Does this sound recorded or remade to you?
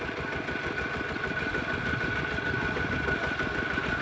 recorded